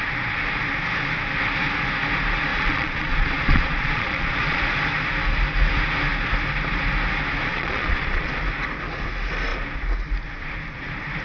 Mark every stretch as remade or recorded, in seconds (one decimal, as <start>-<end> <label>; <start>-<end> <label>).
0.0-2.5 recorded; 2.5-4.6 remade; 4.6-7.5 recorded; 7.5-8.3 remade; 8.3-11.2 recorded